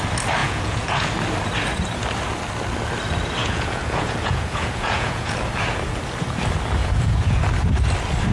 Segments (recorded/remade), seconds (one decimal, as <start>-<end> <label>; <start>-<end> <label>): 0.0-0.4 recorded; 0.4-1.1 remade; 1.1-3.4 recorded; 3.4-5.3 remade; 5.3-6.8 recorded; 6.8-7.4 remade; 7.4-8.3 recorded